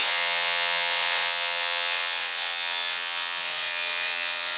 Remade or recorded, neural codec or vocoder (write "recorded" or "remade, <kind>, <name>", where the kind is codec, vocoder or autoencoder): remade, vocoder, WaveNeXt